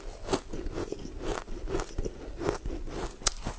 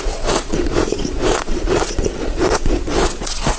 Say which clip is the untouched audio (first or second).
first